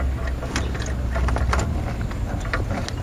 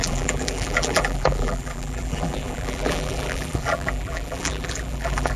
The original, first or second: first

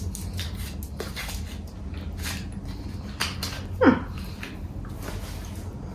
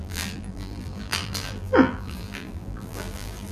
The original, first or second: first